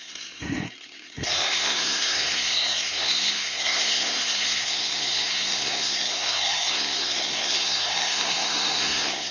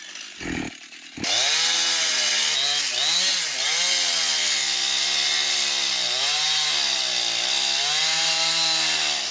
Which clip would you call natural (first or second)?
second